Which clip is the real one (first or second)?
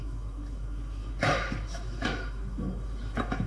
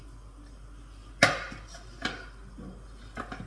second